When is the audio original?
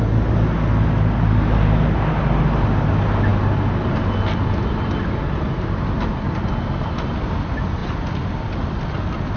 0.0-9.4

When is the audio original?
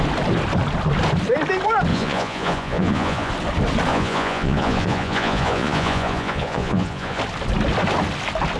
0.0-1.9; 3.3-3.9; 7.2-8.6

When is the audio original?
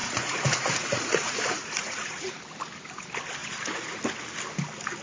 2.3-3.4; 4.0-5.0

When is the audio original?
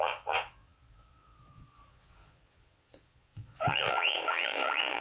none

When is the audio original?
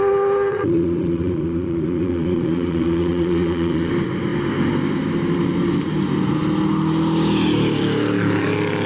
0.0-0.5; 3.9-8.9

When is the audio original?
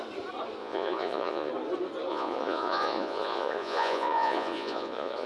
0.0-0.6; 1.5-2.1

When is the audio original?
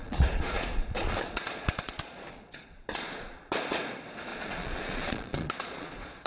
3.8-4.3